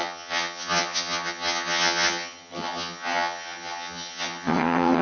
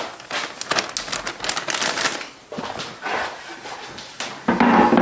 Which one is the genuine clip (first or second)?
second